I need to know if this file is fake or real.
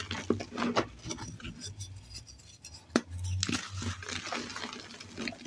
real